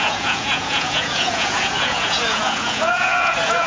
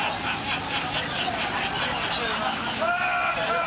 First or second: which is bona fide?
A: second